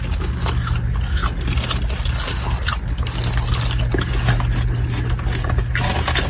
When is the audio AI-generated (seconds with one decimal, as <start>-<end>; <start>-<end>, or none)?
none